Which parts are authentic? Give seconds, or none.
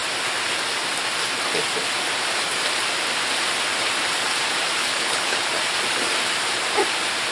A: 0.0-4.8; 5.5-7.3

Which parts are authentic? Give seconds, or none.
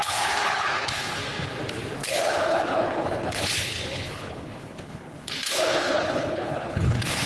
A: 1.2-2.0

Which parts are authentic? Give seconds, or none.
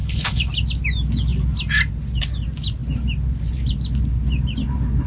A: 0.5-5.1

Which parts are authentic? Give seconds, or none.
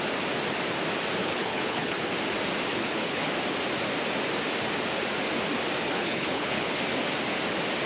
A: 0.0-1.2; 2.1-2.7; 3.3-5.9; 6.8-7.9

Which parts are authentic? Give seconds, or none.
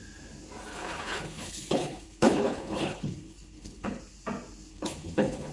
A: 0.0-0.7; 4.0-4.7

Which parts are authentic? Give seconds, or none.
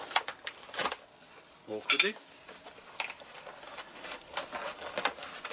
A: 0.0-5.5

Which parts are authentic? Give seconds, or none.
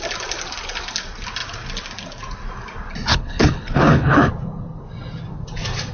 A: 0.0-3.1; 4.3-5.9